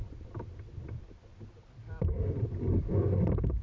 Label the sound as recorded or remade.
recorded